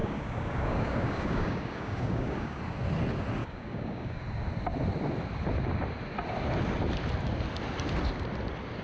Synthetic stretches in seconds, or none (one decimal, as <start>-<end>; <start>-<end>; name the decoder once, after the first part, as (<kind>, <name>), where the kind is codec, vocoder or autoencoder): 0.0-2.6 (codec, DAC); 3.4-4.2